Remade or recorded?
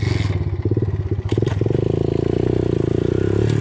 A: recorded